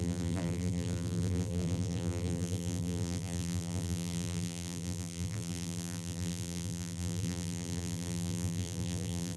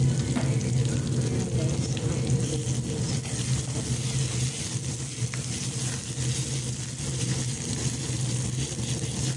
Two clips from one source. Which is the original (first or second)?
second